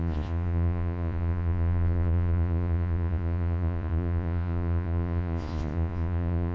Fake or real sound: fake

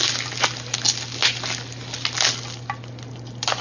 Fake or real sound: real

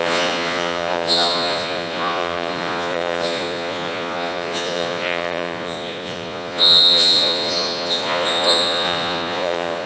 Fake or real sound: fake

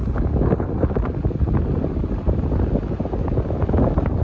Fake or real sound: real